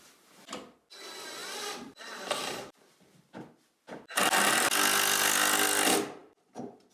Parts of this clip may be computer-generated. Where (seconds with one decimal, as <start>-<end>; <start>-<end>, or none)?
1.4-3.4

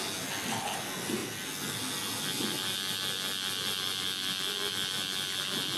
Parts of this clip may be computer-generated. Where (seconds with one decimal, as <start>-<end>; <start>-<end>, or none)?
none

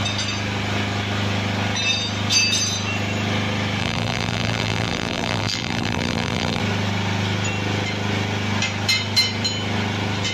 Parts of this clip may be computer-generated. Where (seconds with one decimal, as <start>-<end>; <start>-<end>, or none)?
3.8-6.6

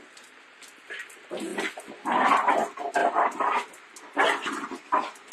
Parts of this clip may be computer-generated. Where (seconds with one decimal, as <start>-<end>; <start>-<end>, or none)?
none

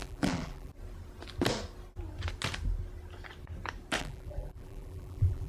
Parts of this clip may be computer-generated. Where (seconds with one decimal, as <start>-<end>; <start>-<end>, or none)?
0.0-0.7; 4.0-5.5

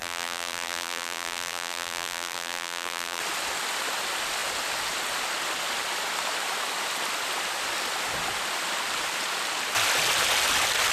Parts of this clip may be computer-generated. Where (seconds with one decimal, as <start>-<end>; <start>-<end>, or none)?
0.0-3.2

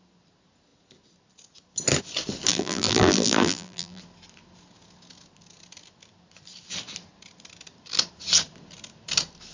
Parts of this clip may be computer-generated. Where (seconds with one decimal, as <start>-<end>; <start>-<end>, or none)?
2.5-4.0